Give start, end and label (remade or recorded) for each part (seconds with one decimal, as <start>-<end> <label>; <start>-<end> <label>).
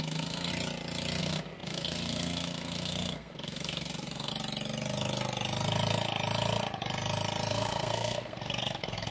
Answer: 0.0-0.5 remade; 0.5-1.2 recorded; 1.2-4.3 remade; 4.3-7.5 recorded; 7.5-9.1 remade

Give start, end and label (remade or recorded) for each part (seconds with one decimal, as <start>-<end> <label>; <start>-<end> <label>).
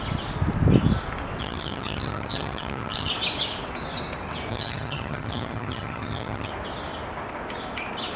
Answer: 0.0-1.4 recorded; 1.4-3.1 remade; 3.1-4.5 recorded; 4.5-6.5 remade; 6.5-8.2 recorded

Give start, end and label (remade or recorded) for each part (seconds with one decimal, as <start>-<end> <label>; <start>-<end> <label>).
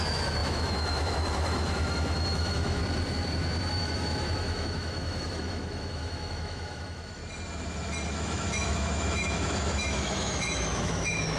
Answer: 0.0-2.8 remade; 2.8-3.7 recorded; 3.7-7.2 remade; 7.2-8.1 recorded; 8.1-11.4 remade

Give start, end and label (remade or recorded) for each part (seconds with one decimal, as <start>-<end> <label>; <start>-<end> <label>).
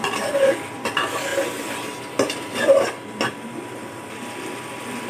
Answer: 0.0-5.1 recorded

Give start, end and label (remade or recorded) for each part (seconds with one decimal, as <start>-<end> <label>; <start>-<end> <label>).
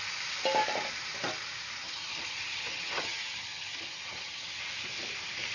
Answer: 0.0-1.8 recorded; 1.8-4.6 remade; 4.6-5.5 recorded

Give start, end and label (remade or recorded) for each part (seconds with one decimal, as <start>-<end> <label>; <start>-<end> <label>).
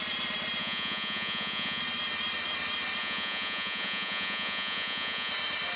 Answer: 0.0-0.6 recorded; 0.6-1.8 remade; 1.8-3.0 recorded; 3.0-5.3 remade; 5.3-5.8 recorded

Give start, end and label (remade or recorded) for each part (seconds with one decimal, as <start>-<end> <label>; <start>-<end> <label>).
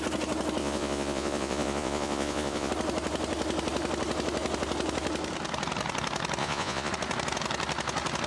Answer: 0.0-0.6 recorded; 0.6-2.7 remade; 2.7-6.4 recorded; 6.4-6.9 remade; 6.9-8.3 recorded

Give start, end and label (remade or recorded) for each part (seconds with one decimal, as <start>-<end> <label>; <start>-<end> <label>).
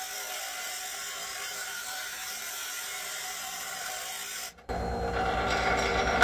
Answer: 0.0-1.3 recorded; 1.3-3.9 remade; 3.9-6.2 recorded